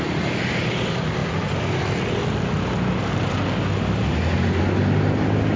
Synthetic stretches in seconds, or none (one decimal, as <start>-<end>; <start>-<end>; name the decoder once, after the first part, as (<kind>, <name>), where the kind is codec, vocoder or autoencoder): none